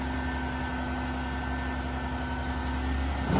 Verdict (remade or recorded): recorded